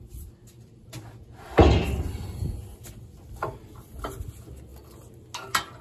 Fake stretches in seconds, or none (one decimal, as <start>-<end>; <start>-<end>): none